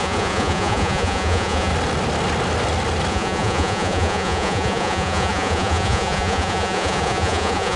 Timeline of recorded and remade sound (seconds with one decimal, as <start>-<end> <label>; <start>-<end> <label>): 0.0-1.7 remade; 1.7-3.1 recorded; 3.1-7.8 remade